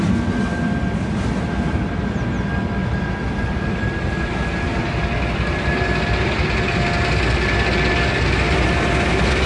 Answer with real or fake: real